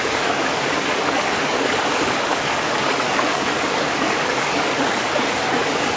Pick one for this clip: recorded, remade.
remade